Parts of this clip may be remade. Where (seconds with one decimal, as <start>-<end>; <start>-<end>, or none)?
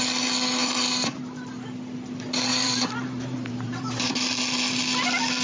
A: 0.6-1.2; 2.5-4.1